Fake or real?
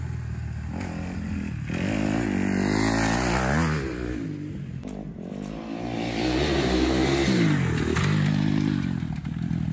real